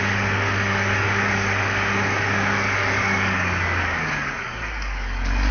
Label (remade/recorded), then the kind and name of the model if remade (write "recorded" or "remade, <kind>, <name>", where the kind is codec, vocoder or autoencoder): remade, codec, DAC